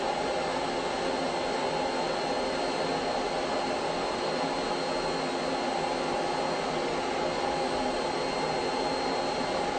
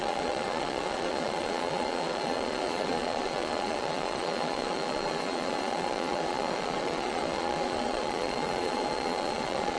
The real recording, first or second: first